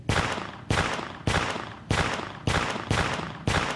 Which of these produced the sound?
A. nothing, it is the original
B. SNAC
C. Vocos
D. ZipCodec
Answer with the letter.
A